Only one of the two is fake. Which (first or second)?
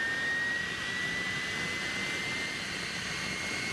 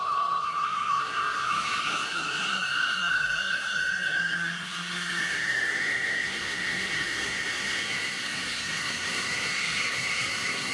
second